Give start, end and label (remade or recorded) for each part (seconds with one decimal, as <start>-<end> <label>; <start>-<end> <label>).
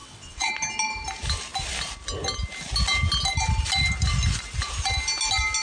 0.0-0.5 remade; 0.5-5.6 recorded